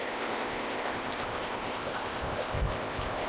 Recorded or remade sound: remade